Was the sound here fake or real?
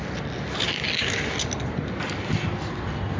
real